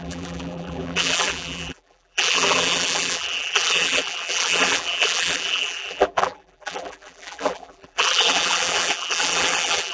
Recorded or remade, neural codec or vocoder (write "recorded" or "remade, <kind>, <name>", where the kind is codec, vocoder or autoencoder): remade, vocoder, BigVGAN v2